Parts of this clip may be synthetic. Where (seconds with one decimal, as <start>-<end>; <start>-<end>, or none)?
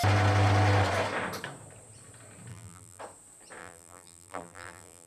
2.5-3.0; 3.6-5.1